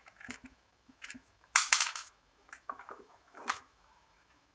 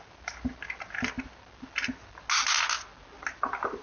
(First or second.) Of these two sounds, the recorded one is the second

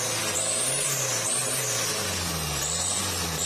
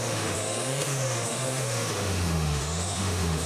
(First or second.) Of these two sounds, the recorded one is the first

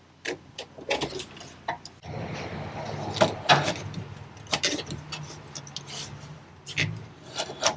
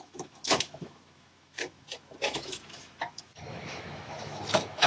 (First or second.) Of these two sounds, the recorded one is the first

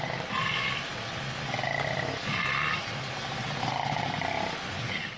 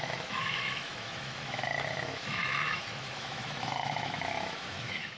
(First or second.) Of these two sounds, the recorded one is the first